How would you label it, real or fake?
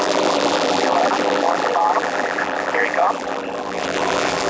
fake